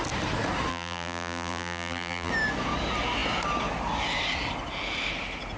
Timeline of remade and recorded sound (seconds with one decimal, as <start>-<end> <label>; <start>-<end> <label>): 0.0-0.7 recorded; 0.7-2.3 remade; 2.3-5.6 recorded